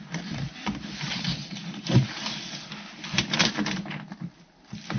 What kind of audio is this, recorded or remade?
recorded